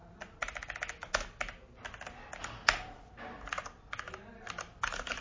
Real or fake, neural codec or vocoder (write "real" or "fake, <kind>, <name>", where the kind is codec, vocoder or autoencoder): real